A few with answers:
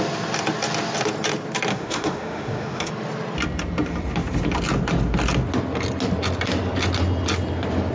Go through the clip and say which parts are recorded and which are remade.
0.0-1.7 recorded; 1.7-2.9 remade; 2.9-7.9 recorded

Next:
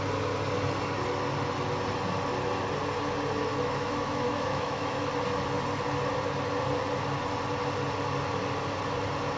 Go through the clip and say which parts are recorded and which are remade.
0.0-3.5 recorded; 3.5-5.1 remade; 5.1-9.4 recorded